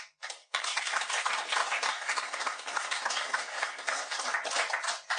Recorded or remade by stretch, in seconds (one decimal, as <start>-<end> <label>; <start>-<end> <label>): 0.0-0.4 recorded; 0.4-1.0 remade; 1.0-1.6 recorded; 1.6-4.2 remade; 4.2-5.2 recorded